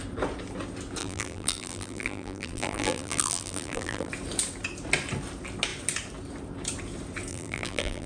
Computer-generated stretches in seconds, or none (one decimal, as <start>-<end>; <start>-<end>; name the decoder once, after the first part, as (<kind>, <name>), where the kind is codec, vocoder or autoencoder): 1.0-4.1 (vocoder, BigVGAN v2); 7.3-8.1